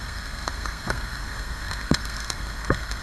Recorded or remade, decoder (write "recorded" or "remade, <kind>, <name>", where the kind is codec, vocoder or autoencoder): remade, codec, SNAC